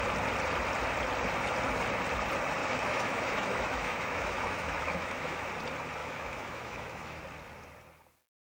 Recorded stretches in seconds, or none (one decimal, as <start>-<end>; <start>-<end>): 0.0-2.6; 5.5-6.0; 7.2-8.5

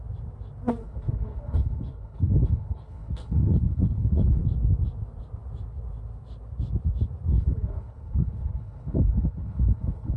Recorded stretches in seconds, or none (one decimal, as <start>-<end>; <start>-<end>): 0.0-0.8; 4.4-7.3

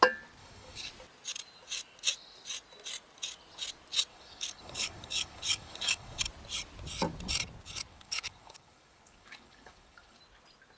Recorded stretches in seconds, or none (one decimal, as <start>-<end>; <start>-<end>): 0.0-0.4; 0.9-4.1; 6.2-7.9; 10.2-10.8

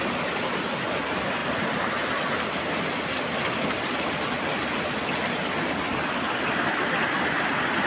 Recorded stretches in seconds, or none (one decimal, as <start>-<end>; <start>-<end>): 0.0-7.9

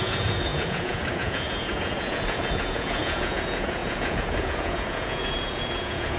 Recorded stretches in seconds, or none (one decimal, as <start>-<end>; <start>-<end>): none